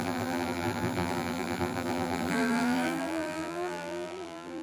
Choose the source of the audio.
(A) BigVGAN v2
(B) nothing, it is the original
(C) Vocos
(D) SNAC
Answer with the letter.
A